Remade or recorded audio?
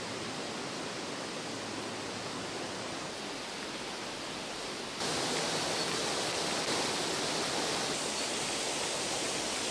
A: recorded